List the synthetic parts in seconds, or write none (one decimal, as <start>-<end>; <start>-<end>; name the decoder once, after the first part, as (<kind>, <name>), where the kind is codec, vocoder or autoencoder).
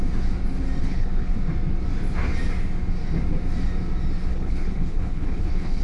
0.8-1.3 (codec, HILCodec); 4.3-5.8